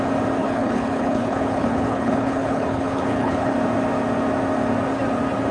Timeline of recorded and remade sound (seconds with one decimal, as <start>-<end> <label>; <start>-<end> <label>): 0.0-0.4 recorded; 0.4-3.5 remade; 3.5-5.5 recorded